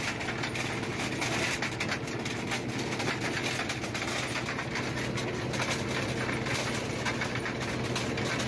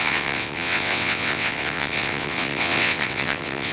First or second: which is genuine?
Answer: first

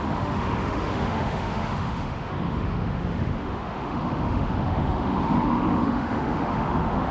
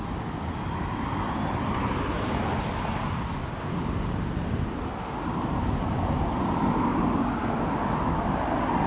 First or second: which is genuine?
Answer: second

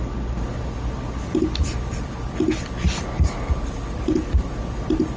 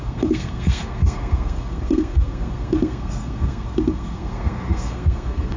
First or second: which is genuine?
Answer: first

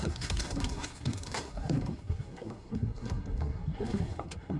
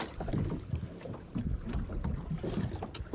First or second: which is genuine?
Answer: second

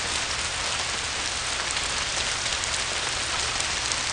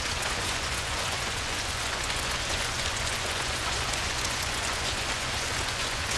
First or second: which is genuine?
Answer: first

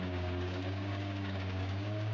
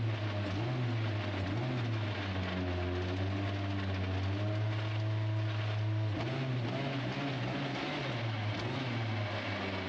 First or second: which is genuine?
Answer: second